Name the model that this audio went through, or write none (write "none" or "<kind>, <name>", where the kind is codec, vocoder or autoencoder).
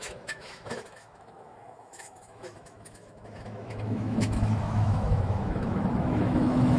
autoencoder, DAC-VAE